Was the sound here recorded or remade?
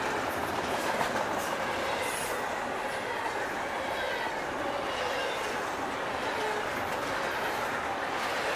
recorded